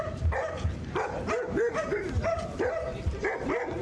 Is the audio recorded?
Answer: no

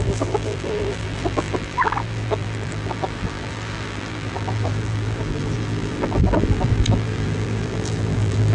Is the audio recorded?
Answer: no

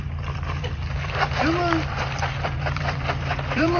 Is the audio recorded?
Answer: no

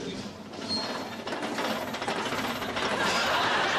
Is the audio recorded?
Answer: yes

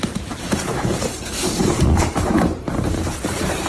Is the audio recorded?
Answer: no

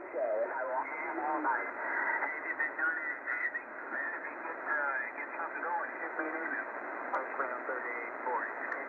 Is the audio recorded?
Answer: yes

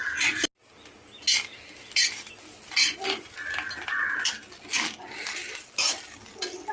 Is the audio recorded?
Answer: yes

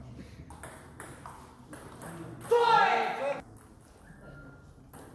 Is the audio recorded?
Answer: yes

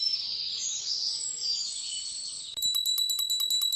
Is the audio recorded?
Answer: yes